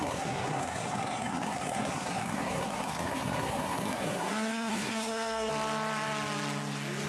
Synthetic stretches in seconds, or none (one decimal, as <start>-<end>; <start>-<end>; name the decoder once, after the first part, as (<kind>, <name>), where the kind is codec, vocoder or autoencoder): 0.0-5.5 (codec, SNAC)